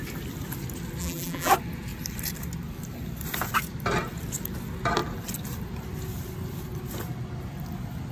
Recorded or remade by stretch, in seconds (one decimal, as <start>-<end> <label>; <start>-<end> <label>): 0.0-1.0 recorded; 1.0-1.5 remade; 1.5-8.1 recorded